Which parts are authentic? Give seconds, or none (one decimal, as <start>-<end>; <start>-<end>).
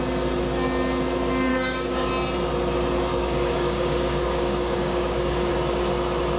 0.0-1.5; 2.1-3.1; 5.5-6.4